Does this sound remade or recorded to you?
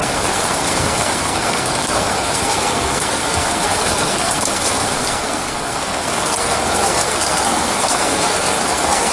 remade